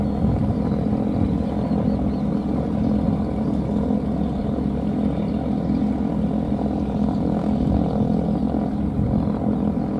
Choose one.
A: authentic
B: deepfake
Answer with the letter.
A